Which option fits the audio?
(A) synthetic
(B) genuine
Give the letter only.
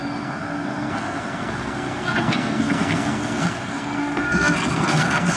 A